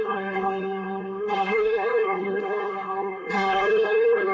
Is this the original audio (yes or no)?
no